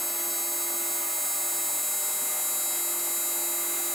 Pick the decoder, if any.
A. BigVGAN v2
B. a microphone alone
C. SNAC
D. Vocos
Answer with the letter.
B